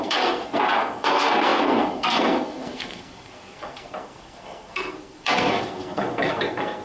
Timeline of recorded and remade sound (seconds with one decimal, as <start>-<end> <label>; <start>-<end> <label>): 0.0-6.8 remade